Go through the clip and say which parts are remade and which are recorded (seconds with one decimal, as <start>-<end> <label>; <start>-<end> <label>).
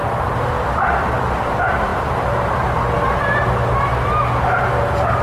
0.0-5.2 recorded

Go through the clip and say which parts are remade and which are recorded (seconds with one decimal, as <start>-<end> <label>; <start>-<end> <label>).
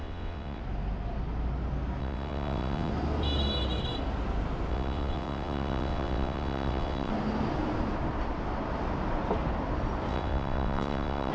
0.0-0.6 remade; 0.6-2.0 recorded; 2.0-2.9 remade; 2.9-4.7 recorded; 4.7-7.1 remade; 7.1-10.1 recorded; 10.1-11.3 remade